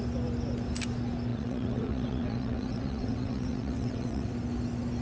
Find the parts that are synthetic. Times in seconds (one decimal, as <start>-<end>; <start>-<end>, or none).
1.3-4.3